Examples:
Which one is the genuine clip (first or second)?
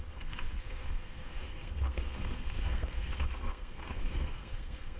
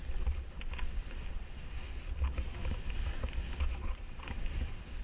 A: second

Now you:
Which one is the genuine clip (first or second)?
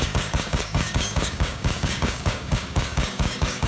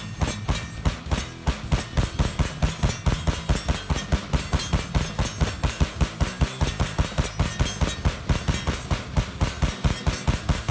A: second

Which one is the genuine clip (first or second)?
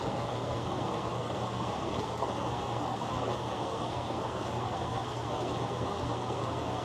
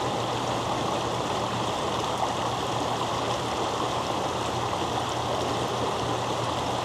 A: second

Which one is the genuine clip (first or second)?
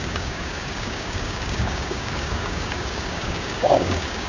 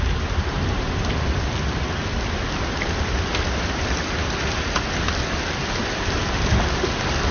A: second